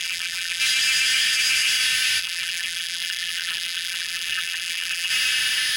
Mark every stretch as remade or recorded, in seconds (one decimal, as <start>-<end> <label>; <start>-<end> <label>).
0.0-0.6 remade; 0.6-2.2 recorded; 2.2-5.1 remade; 5.1-5.8 recorded